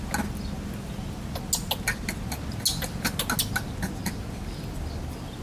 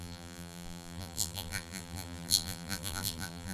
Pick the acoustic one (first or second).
first